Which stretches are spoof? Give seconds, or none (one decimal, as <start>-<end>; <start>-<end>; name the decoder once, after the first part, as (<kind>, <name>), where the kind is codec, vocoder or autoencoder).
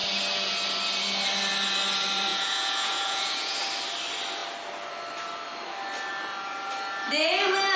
2.3-3.6 (vocoder, Vocos)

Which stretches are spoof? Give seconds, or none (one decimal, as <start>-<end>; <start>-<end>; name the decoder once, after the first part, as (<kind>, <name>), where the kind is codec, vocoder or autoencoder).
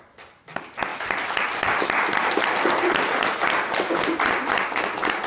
none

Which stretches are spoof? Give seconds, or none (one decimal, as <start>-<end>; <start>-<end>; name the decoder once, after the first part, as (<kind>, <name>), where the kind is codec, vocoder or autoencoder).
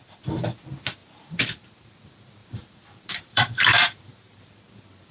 1.0-1.9 (vocoder, BigVGAN v2); 2.4-4.5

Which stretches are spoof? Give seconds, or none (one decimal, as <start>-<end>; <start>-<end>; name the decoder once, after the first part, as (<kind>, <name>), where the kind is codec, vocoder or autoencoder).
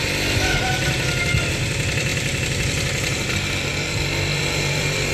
3.7-5.1 (vocoder, BigVGAN v2)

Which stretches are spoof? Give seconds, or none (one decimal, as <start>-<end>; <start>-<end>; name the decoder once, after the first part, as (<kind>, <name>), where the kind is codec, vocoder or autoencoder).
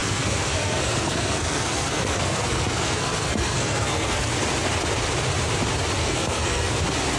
0.0-4.3 (codec, SNAC); 6.0-6.8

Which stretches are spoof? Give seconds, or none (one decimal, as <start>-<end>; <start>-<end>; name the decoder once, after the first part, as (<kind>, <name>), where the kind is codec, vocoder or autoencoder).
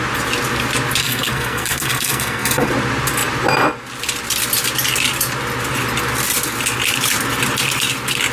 1.0-2.7 (codec, SNAC)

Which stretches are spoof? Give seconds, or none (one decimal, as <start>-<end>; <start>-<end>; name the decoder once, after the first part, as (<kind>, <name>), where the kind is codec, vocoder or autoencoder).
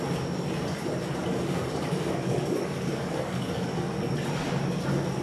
1.2-4.0 (codec, DAC)